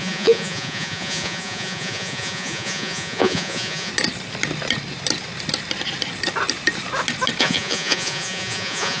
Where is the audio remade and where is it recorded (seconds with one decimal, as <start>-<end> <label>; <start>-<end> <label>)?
0.0-3.9 remade; 3.9-7.4 recorded; 7.4-9.0 remade